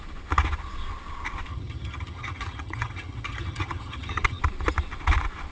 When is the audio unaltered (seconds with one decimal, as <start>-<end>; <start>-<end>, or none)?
0.0-1.5; 4.4-5.5